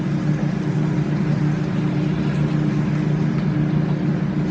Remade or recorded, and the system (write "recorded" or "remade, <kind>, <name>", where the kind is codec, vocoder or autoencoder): recorded